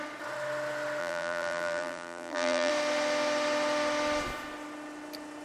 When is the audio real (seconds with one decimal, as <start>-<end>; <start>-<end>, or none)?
0.0-1.0; 2.7-5.4